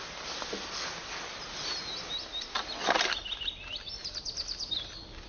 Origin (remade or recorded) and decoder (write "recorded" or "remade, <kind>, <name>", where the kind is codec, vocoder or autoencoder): recorded